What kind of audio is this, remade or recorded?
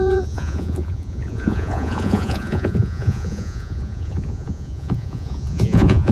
remade